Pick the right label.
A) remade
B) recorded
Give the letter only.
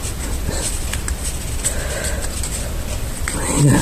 B